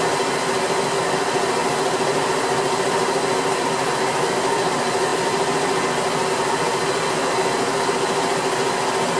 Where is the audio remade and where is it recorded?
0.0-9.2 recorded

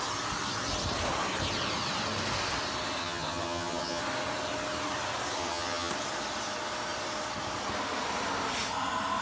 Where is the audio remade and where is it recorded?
0.0-3.0 recorded; 3.0-4.0 remade; 4.0-5.4 recorded; 5.4-5.9 remade; 5.9-9.2 recorded

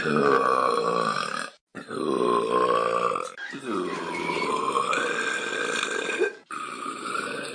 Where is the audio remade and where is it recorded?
0.0-1.7 remade; 1.7-6.2 recorded; 6.2-7.5 remade

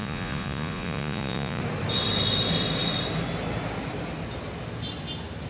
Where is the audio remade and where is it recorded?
0.0-1.6 remade; 1.6-5.5 recorded